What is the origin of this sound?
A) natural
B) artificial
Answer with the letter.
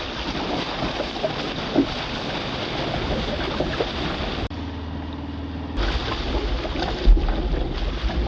A